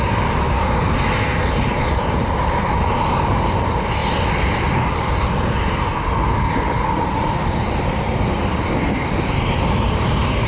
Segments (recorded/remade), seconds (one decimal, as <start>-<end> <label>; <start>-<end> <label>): 0.0-4.0 remade; 4.0-4.9 recorded; 4.9-5.9 remade; 5.9-7.6 recorded; 7.6-10.5 remade